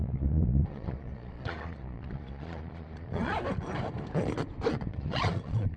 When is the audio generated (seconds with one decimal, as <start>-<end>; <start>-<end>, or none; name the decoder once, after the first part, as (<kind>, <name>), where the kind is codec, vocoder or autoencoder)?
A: 0.0-3.3 (vocoder, Vocos); 4.7-5.8